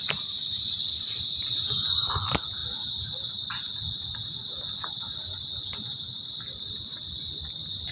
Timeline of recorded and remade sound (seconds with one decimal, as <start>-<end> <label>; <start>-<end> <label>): 0.0-7.9 recorded